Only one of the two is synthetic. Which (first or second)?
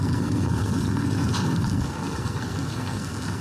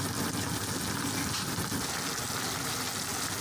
first